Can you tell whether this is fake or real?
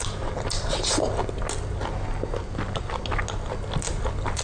real